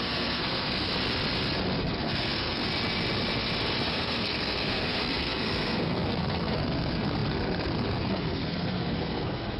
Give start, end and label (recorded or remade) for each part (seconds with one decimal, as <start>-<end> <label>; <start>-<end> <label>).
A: 0.0-0.9 remade; 0.9-1.8 recorded; 1.8-2.6 remade; 2.6-3.9 recorded; 3.9-9.6 remade